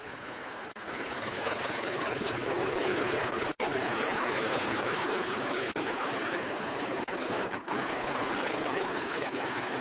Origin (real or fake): fake